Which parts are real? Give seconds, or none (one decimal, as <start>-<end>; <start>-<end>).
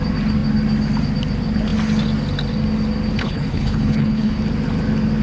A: 0.0-3.2; 4.4-5.2